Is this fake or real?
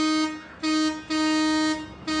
real